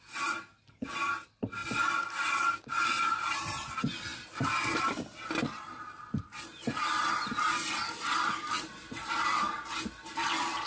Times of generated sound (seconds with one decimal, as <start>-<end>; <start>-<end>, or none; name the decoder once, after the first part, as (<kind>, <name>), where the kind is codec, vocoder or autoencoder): none

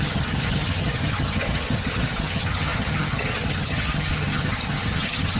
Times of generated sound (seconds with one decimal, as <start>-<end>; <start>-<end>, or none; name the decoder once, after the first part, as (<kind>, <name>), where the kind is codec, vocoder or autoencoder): 0.0-5.4 (vocoder, HiFi-GAN)

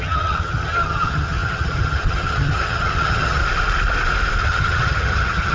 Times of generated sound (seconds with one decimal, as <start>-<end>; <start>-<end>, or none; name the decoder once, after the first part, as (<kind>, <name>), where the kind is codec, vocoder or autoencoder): 0.0-3.4 (vocoder, HiFi-GAN); 4.4-5.5

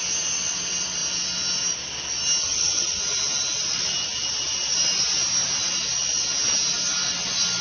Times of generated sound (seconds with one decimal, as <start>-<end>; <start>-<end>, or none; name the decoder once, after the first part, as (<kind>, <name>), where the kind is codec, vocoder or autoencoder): 2.4-3.0 (vocoder, HiFi-GAN)

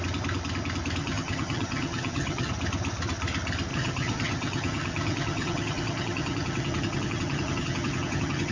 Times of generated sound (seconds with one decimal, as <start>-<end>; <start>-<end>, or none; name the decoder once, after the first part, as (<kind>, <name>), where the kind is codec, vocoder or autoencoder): 1.0-2.5 (vocoder, HiFi-GAN); 3.7-8.5